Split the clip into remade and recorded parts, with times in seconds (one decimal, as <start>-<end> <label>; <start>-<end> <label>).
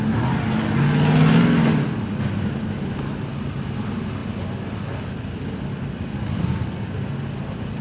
0.0-7.8 recorded